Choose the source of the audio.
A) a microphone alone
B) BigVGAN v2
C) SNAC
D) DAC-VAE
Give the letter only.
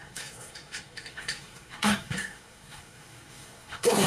C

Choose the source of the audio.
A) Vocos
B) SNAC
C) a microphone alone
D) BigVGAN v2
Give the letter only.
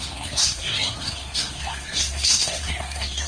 B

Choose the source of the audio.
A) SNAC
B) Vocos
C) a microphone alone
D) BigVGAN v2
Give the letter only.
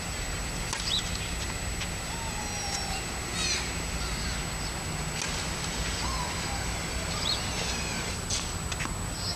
C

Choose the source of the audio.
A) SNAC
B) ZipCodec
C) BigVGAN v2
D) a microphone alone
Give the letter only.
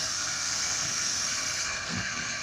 A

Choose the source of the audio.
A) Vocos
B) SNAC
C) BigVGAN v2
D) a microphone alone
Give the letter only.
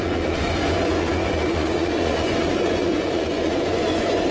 A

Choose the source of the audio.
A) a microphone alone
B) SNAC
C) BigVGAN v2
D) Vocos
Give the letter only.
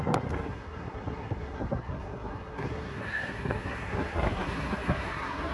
B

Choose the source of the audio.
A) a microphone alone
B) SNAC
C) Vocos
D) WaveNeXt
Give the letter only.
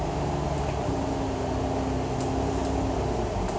A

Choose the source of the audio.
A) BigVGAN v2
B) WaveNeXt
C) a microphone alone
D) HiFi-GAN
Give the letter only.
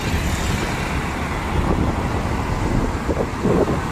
C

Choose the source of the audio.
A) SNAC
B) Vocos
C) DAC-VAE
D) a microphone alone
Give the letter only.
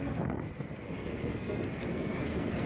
A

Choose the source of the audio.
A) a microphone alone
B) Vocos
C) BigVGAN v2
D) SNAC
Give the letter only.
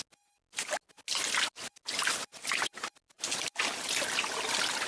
A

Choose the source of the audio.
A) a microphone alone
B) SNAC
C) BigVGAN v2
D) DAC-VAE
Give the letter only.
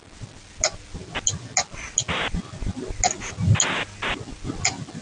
A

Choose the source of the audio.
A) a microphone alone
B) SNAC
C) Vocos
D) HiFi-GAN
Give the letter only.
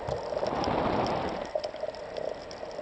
A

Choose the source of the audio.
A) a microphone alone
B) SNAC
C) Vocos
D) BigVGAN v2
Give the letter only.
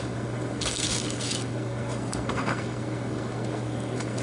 B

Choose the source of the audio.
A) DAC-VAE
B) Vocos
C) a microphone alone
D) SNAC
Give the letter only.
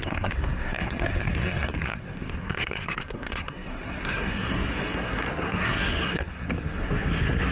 D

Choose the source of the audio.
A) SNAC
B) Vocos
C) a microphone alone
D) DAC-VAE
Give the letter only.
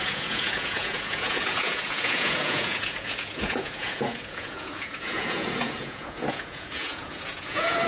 B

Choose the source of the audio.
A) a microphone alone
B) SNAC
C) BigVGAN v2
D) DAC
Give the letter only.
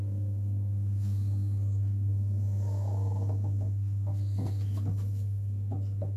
B